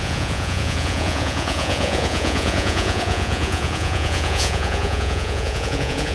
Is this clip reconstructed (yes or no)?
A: yes